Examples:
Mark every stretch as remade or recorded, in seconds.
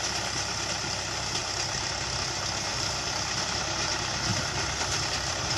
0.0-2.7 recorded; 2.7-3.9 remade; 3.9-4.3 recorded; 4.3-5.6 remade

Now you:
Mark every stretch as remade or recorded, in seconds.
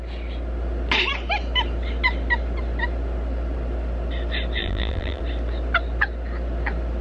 0.0-4.6 recorded; 4.6-5.2 remade; 5.2-7.0 recorded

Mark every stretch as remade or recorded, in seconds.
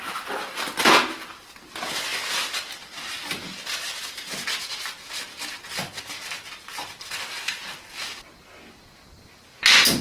0.0-10.0 recorded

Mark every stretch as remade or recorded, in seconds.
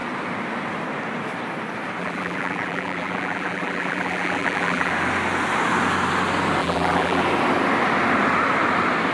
0.0-2.0 recorded; 2.0-4.9 remade; 4.9-6.6 recorded; 6.6-7.2 remade; 7.2-9.1 recorded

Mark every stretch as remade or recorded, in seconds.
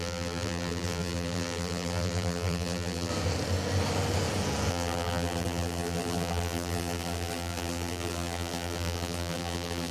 0.0-3.1 remade; 3.1-4.7 recorded; 4.7-9.9 remade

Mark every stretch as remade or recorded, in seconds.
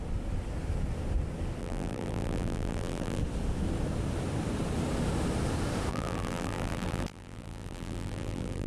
0.0-1.6 recorded; 1.6-3.2 remade; 3.2-5.9 recorded; 5.9-8.7 remade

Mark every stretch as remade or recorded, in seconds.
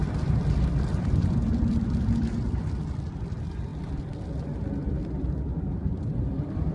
0.0-3.7 remade; 3.7-4.9 recorded; 4.9-6.7 remade